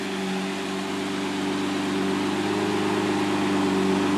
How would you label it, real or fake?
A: real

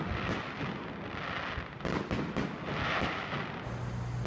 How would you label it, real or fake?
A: real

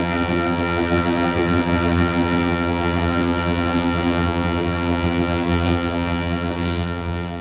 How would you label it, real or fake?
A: fake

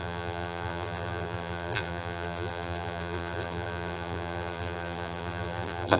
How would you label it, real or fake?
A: fake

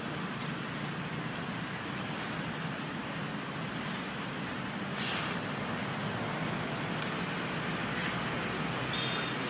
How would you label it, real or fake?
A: real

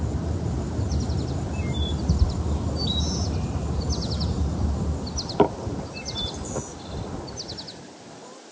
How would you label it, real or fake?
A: real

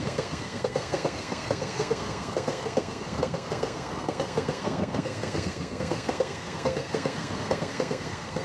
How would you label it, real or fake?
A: fake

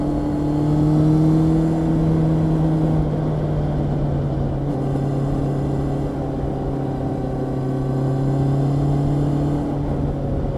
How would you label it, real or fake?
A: real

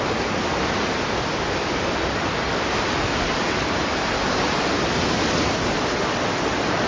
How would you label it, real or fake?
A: real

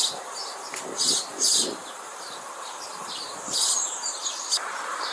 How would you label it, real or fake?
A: fake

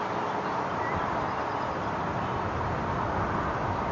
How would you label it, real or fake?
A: real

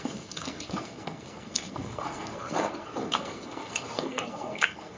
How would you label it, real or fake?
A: fake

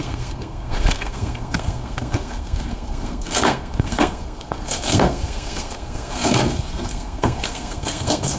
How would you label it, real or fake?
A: fake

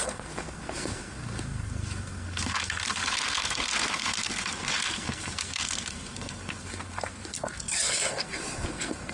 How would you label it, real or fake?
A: fake